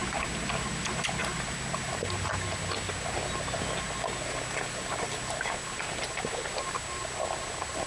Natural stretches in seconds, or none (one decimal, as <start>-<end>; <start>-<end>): 0.0-7.9